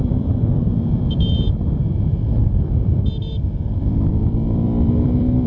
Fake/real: fake